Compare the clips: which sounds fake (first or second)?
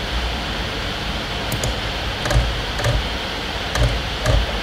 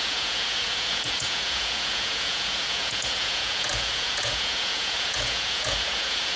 second